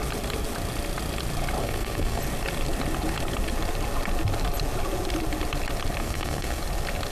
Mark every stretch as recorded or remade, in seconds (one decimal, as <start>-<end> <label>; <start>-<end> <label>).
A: 0.0-1.6 recorded; 1.6-2.2 remade; 2.2-6.0 recorded; 6.0-6.6 remade; 6.6-7.1 recorded